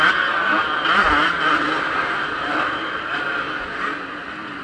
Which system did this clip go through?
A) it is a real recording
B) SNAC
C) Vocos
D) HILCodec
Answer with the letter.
A